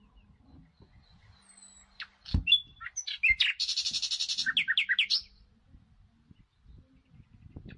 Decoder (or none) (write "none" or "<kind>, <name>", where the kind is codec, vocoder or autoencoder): none